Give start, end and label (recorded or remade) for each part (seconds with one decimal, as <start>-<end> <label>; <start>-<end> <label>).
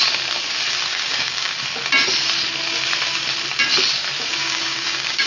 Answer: 0.0-0.9 recorded; 0.9-1.5 remade; 1.5-4.4 recorded; 4.4-5.3 remade